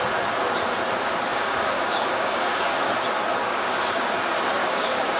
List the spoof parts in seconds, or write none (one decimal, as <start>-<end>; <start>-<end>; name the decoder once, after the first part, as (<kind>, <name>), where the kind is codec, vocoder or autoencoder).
1.3-2.9 (codec, DAC); 3.4-4.1; 4.6-5.2